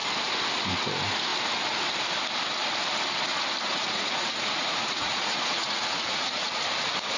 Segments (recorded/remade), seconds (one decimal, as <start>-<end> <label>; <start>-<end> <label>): 0.0-3.7 recorded; 3.7-6.5 remade; 6.5-7.2 recorded